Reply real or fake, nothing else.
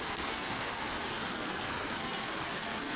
fake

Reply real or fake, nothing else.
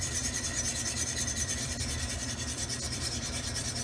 fake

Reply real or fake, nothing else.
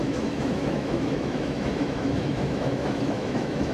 fake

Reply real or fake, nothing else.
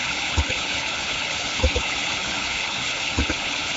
fake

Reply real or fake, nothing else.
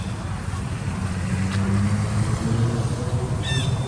real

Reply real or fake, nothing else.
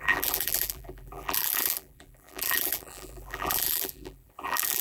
fake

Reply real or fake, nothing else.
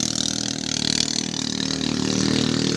real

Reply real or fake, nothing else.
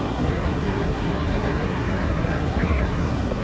fake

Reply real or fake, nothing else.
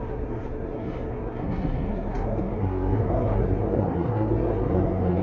fake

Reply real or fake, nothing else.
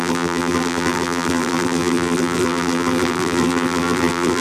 fake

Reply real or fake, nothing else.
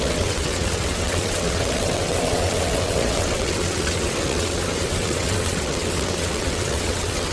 fake